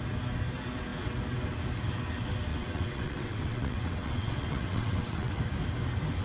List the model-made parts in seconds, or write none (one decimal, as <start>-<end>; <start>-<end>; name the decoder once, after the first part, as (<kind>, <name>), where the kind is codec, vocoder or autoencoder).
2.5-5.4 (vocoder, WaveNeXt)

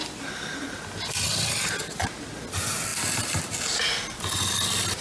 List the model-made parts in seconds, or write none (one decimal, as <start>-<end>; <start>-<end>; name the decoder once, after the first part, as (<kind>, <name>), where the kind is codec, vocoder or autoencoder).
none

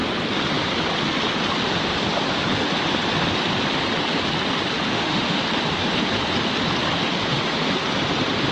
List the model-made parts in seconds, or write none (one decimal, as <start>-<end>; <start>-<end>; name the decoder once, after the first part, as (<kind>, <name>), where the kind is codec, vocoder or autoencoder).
4.9-5.4 (autoencoder, DAC-VAE)

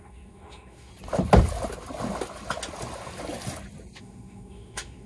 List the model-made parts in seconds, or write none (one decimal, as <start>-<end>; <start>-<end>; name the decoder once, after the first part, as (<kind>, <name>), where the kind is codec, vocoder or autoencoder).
0.0-0.9 (autoencoder, DAC-VAE); 4.0-5.1

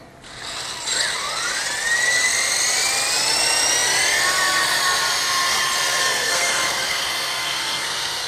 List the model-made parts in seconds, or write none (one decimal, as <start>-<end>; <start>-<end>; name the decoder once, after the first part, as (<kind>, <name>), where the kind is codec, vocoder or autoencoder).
6.0-8.3 (codec, SNAC)

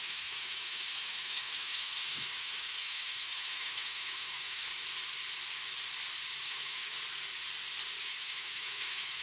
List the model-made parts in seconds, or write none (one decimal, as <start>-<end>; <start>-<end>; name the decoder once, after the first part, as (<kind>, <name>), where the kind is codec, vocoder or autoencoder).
0.0-4.7 (autoencoder, DAC-VAE); 6.4-6.9; 8.0-9.2

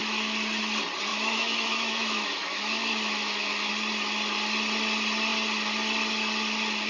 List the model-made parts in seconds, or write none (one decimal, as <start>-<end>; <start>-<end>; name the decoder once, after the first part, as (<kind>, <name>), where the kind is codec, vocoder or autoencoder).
1.1-3.7 (autoencoder, DAC-VAE)

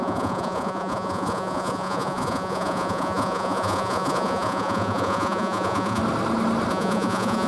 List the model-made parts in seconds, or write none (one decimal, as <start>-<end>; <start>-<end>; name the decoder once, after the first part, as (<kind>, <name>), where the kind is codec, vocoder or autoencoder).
0.0-6.0 (vocoder, Vocos); 6.7-7.5